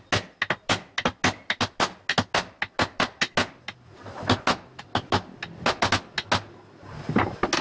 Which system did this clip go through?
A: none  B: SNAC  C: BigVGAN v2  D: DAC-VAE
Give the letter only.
A